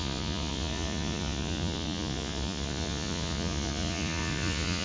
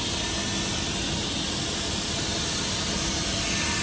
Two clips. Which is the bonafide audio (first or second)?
second